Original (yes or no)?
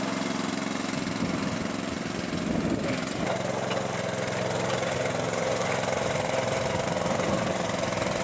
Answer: yes